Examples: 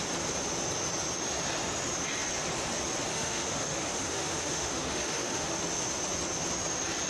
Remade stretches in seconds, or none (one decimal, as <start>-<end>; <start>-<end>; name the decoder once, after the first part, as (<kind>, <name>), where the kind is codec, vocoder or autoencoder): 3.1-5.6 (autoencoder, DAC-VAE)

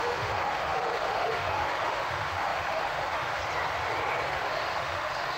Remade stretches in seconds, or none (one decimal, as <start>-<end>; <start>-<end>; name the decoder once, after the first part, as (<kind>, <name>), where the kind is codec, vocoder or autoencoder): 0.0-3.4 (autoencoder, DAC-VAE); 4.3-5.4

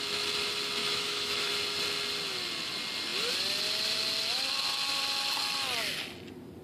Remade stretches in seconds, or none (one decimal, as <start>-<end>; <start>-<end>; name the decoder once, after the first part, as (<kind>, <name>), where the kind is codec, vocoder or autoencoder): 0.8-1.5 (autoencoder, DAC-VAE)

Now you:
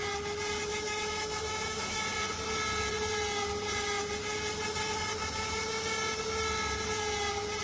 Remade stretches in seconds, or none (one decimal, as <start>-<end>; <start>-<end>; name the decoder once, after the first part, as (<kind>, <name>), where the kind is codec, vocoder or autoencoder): 0.7-2.0 (autoencoder, DAC-VAE)